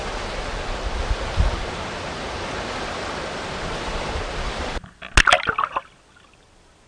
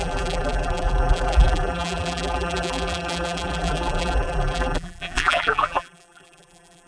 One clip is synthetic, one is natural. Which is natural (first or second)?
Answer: first